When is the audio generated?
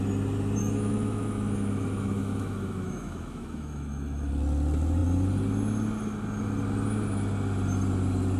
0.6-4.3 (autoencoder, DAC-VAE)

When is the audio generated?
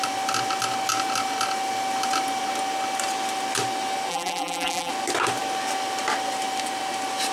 4.1-4.9 (vocoder, BigVGAN v2)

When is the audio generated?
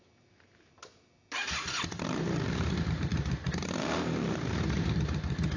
0.0-0.9 (vocoder, BigVGAN v2); 1.9-5.6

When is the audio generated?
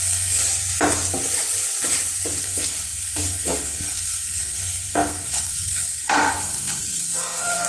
0.0-0.4 (codec, SNAC); 2.4-7.7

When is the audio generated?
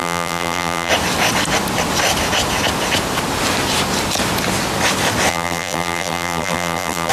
0.0-0.9 (vocoder, BigVGAN v2); 5.3-7.1